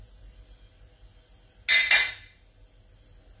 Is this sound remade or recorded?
recorded